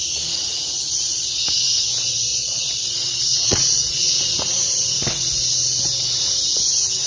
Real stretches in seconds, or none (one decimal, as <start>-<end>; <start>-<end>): 0.0-2.3; 4.1-7.1